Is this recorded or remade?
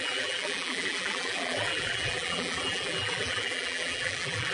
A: remade